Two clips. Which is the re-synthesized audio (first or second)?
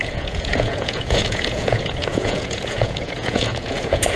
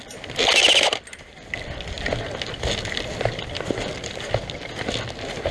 first